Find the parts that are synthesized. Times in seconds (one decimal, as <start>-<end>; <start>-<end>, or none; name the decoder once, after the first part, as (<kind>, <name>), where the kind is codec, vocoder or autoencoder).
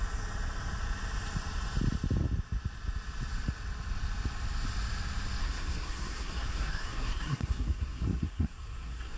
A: 5.4-9.2 (codec, SNAC)